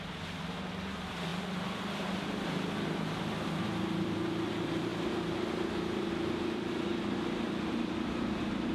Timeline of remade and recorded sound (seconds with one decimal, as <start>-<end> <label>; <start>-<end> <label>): 0.0-4.9 remade; 4.9-6.1 recorded; 6.1-6.9 remade; 6.9-7.7 recorded; 7.7-8.7 remade